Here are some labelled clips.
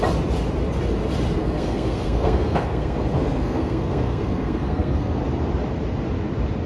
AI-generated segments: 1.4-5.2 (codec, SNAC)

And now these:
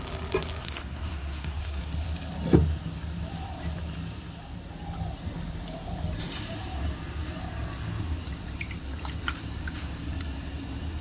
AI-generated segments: 0.6-1.8 (codec, SNAC)

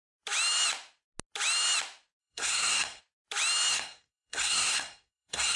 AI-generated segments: 2.2-3.0 (codec, SNAC); 3.7-5.6

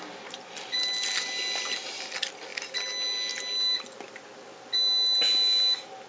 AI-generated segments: none

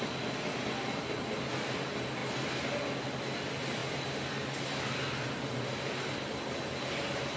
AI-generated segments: none